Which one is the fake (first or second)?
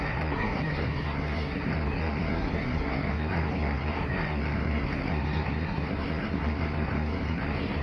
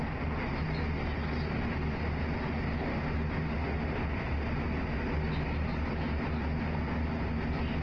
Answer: first